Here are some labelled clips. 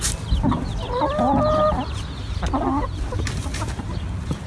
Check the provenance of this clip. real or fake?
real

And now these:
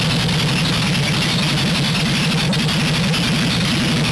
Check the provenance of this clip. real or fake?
real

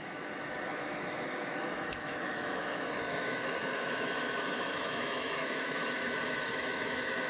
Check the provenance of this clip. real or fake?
fake